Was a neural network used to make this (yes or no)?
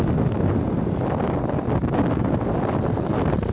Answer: no